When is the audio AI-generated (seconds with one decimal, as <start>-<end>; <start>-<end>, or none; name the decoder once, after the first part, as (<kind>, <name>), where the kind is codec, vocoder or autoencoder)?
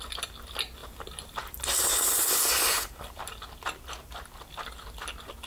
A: 0.8-3.1 (vocoder, BigVGAN v2)